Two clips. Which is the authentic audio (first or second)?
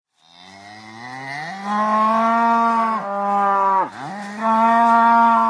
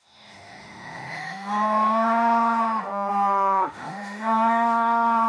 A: first